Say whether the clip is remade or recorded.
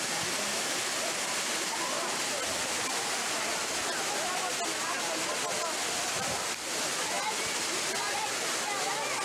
recorded